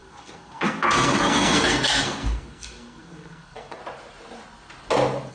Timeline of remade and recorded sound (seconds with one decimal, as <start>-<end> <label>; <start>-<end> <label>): 0.0-3.8 remade; 3.8-5.3 recorded